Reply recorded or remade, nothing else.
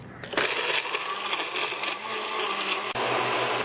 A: recorded